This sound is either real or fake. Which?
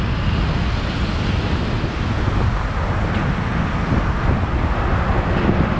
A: real